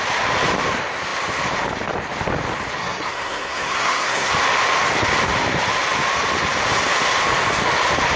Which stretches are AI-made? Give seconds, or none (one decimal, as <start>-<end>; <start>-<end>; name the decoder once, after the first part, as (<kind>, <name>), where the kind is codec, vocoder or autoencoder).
2.8-4.3 (codec, SNAC)